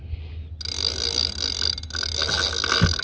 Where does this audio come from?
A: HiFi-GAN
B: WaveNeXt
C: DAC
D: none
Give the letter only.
D